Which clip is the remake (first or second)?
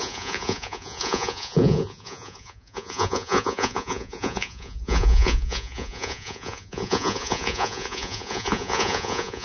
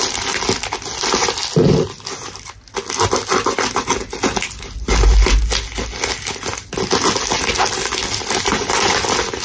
first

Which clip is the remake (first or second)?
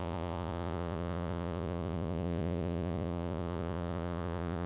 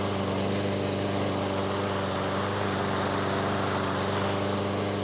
first